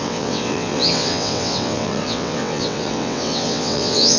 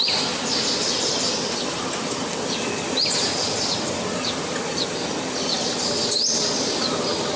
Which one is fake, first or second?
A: first